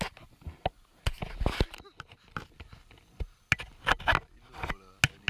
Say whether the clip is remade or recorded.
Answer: recorded